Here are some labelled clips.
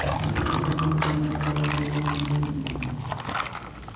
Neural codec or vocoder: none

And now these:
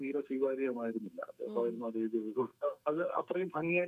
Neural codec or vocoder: codec, SNAC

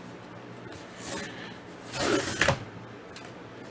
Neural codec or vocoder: none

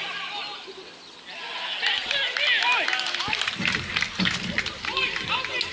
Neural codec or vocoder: none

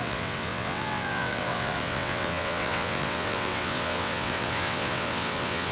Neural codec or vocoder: vocoder, WaveNeXt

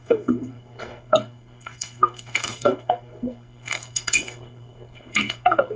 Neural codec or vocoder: codec, SNAC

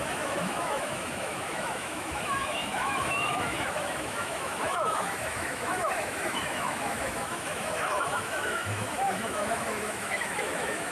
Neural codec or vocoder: autoencoder, DAC-VAE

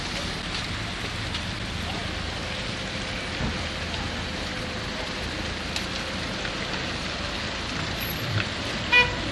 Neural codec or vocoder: none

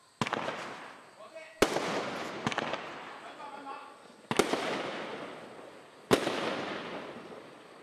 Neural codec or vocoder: none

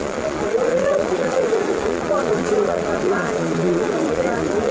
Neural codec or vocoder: vocoder, Vocos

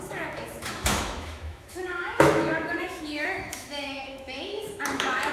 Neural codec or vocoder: autoencoder, DAC-VAE